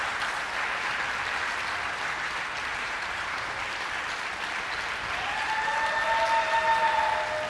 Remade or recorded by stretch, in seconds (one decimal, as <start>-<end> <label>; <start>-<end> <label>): 0.0-2.7 recorded; 2.7-3.5 remade; 3.5-7.5 recorded